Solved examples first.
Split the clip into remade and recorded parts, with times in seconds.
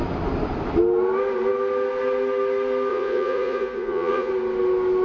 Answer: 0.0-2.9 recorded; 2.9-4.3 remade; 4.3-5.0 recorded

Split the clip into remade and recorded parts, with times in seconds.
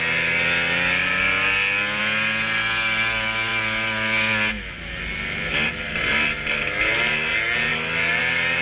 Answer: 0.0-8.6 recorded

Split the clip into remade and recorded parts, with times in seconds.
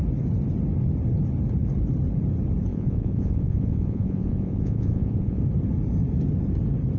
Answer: 0.0-2.7 recorded; 2.7-5.4 remade; 5.4-7.0 recorded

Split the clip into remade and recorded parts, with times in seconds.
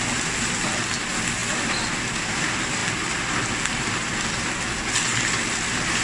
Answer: 0.0-6.0 recorded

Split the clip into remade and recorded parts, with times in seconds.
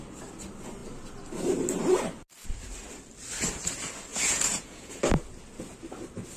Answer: 0.0-4.1 recorded; 4.1-4.9 remade; 4.9-6.4 recorded